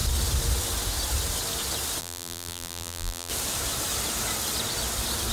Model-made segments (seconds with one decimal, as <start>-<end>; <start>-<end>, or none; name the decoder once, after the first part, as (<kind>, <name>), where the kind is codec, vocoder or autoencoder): 2.0-3.3 (vocoder, BigVGAN v2)